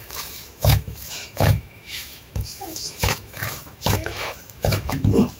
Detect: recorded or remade remade